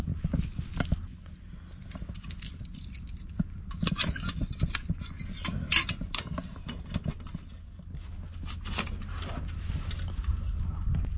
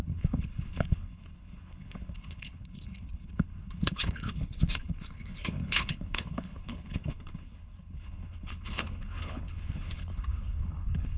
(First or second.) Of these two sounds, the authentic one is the first